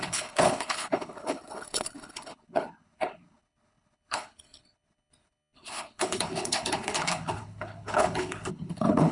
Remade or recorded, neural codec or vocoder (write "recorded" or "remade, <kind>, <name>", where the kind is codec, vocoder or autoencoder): remade, codec, HILCodec